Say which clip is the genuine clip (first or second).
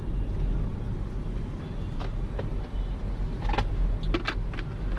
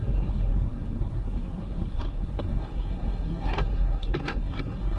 first